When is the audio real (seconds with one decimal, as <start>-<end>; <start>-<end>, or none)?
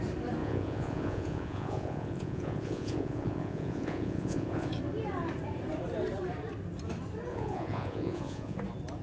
0.0-0.4; 4.7-7.3; 8.6-9.0